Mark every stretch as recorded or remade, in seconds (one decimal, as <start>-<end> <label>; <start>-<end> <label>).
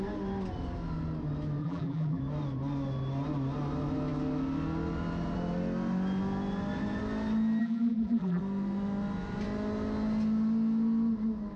0.0-1.6 recorded; 1.6-2.2 remade; 2.2-7.6 recorded; 7.6-8.4 remade; 8.4-11.6 recorded